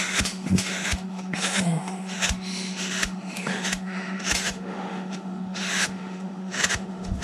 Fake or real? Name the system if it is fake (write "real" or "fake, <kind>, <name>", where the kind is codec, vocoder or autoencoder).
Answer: fake, autoencoder, DAC-VAE